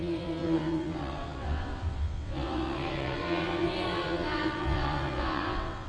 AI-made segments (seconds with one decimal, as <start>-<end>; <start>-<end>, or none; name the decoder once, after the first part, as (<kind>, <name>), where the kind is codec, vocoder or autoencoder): 0.0-5.9 (vocoder, WaveNeXt)